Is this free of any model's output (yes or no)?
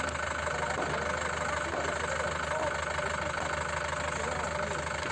yes